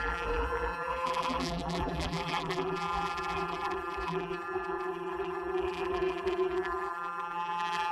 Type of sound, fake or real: fake